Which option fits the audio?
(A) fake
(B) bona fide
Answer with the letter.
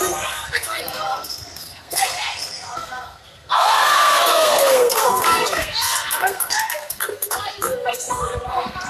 A